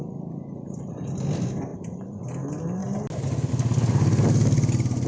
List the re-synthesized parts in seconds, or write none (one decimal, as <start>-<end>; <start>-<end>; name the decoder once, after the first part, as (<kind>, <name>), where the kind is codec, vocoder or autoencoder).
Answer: 1.7-2.2 (vocoder, BigVGAN v2)